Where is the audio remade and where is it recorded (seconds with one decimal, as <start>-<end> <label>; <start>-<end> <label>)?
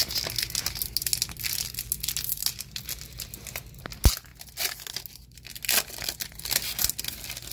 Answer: 0.0-7.5 recorded